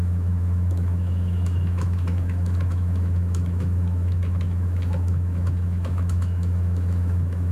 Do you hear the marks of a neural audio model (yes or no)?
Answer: yes